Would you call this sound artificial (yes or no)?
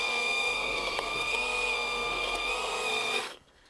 yes